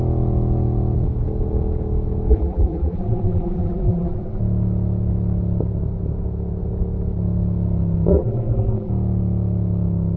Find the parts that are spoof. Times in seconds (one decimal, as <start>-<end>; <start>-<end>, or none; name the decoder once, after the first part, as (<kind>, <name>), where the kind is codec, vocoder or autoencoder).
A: 2.3-4.4 (vocoder, BigVGAN v2); 8.1-8.9